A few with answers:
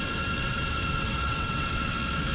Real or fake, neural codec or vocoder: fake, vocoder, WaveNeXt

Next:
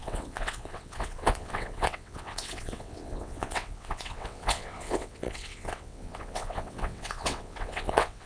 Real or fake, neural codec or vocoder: fake, vocoder, WaveNeXt